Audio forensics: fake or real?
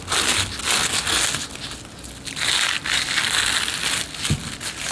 real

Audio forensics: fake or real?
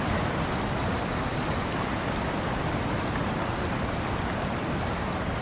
real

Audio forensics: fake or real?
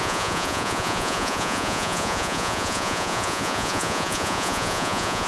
fake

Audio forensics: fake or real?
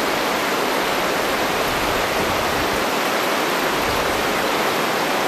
real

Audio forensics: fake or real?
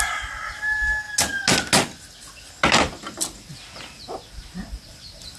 real